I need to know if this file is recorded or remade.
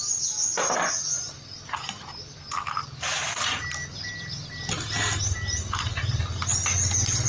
recorded